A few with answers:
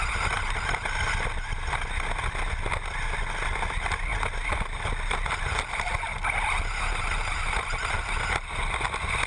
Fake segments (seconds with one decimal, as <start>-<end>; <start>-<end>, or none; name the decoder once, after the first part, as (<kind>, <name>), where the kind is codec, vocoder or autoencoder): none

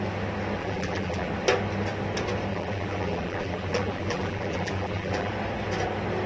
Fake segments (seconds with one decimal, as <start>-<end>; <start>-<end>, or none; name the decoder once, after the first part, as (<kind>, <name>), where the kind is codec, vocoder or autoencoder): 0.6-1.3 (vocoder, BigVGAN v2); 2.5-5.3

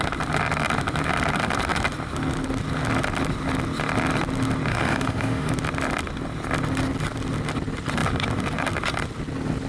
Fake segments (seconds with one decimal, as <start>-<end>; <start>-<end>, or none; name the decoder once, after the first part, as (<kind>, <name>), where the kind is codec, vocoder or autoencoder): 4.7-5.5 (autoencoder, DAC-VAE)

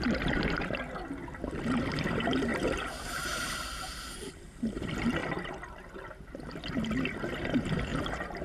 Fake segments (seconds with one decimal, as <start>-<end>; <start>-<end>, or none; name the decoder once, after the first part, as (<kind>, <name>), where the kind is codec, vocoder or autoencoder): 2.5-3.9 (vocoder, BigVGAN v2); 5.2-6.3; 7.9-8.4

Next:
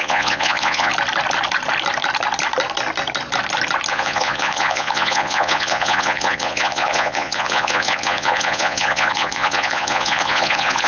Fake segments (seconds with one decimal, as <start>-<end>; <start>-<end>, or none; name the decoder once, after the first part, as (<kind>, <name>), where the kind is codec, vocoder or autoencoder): 0.0-0.9 (vocoder, Vocos); 3.9-10.9

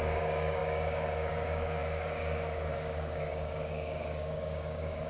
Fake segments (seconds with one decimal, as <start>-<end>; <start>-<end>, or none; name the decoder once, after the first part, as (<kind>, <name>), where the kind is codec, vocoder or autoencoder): 0.0-5.1 (codec, DAC)